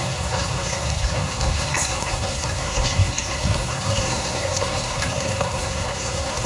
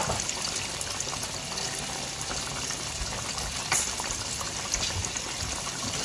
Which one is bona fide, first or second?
second